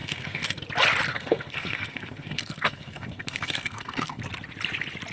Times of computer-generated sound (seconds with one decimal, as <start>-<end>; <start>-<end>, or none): 0.0-0.6; 1.1-4.2